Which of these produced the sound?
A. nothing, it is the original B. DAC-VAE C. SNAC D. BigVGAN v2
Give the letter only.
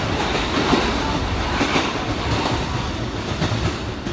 A